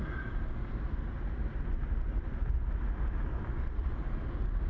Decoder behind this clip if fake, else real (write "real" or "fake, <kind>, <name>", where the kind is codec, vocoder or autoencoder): real